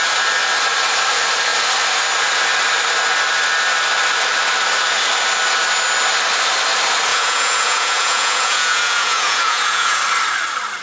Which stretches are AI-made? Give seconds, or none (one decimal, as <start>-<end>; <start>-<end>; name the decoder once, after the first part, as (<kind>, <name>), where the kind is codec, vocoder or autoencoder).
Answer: 7.1-10.0 (vocoder, Vocos)

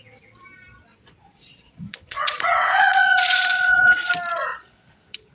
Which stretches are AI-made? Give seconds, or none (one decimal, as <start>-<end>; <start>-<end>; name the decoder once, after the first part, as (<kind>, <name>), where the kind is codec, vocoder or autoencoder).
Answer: 0.9-4.1 (vocoder, Vocos); 4.5-5.3